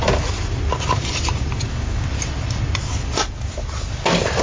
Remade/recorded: recorded